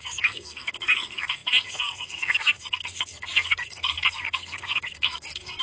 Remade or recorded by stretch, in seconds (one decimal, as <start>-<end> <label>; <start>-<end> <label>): 0.0-5.6 remade